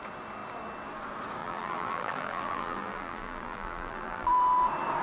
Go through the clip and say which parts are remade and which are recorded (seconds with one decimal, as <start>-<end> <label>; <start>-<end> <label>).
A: 0.0-1.4 recorded; 1.4-4.4 remade; 4.4-5.0 recorded